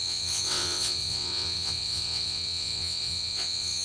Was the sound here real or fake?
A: fake